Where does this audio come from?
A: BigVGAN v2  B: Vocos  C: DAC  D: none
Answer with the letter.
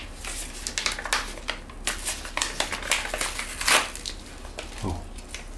D